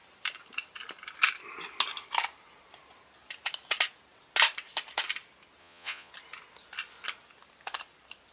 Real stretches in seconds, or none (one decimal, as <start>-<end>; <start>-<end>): 0.0-5.6; 6.1-8.3